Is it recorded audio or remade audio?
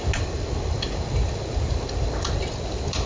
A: recorded